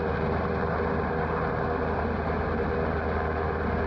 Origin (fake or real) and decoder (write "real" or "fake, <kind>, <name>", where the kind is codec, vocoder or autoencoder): real